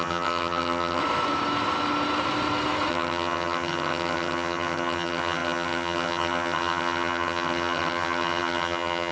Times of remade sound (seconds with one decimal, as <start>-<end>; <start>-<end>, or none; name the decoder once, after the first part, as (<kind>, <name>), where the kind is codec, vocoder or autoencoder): 0.0-1.0 (vocoder, HiFi-GAN); 2.9-9.1